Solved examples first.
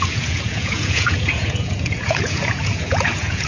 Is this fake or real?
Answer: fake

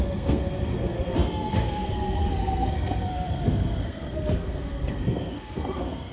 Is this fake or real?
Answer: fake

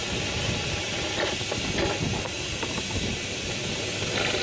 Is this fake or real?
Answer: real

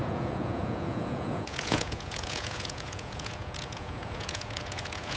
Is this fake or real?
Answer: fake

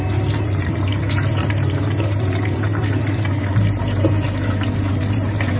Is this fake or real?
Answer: fake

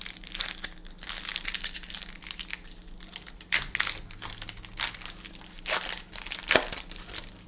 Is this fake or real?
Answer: real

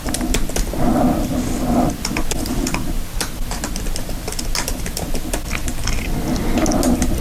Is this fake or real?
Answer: real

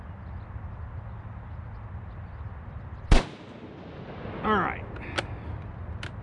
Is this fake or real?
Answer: real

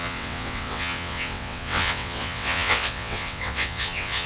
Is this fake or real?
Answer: fake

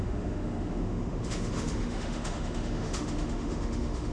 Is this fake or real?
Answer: fake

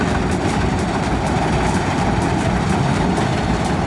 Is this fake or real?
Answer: real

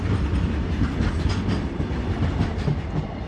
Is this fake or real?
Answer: real